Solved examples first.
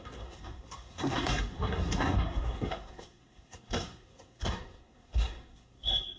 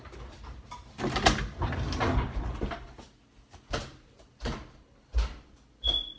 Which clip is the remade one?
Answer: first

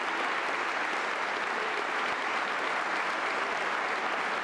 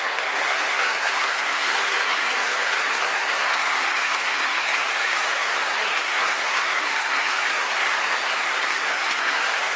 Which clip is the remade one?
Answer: second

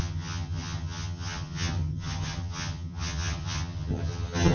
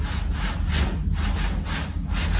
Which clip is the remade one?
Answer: first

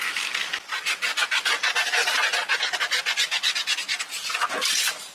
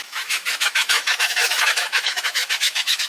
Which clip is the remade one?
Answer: second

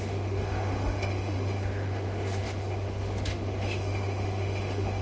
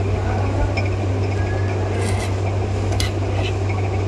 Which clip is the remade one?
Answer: first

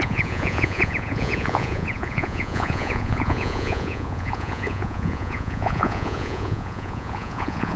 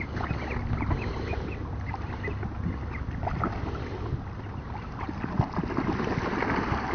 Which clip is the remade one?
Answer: first